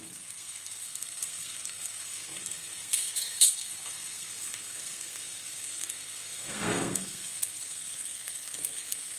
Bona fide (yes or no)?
no